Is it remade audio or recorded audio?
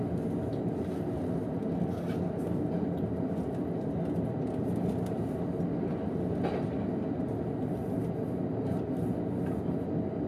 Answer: recorded